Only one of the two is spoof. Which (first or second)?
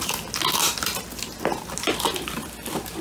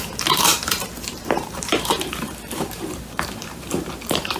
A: second